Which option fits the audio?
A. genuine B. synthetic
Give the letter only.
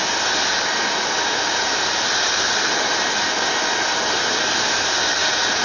A